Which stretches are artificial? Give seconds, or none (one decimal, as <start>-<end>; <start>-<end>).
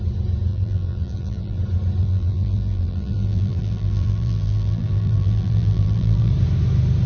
0.5-1.6; 2.0-6.3